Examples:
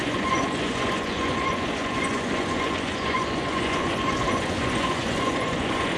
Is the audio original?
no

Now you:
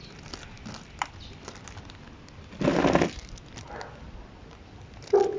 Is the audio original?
yes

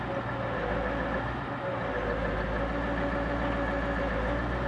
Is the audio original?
yes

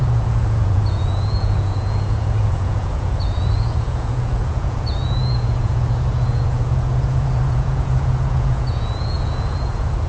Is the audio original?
no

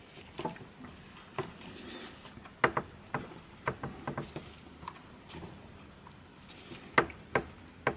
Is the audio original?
yes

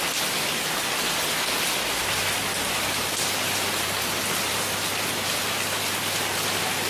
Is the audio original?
yes